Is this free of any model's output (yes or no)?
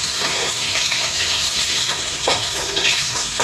no